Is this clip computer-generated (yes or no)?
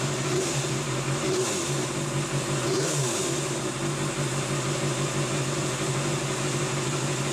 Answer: no